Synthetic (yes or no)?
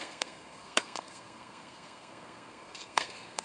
yes